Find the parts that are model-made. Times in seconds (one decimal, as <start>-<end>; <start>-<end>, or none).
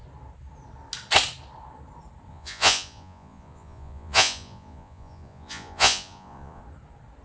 2.3-6.6